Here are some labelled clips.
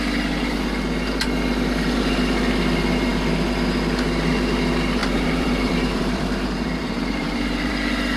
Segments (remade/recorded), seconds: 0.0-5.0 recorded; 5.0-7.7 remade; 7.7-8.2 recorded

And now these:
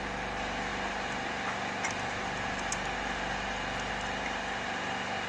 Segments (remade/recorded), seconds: 0.0-5.3 recorded

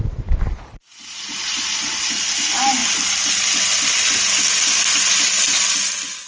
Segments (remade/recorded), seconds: 0.0-6.3 recorded

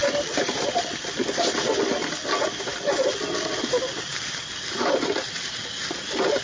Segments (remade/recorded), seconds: 0.0-1.3 remade; 1.3-6.4 recorded

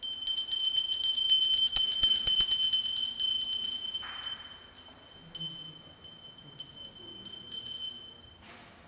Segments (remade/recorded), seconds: 0.0-8.9 recorded

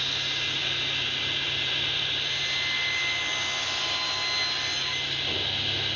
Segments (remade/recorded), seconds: 0.0-0.6 recorded; 0.6-2.4 remade; 2.4-6.0 recorded

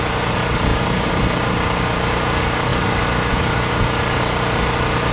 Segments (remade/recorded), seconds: 0.0-5.1 recorded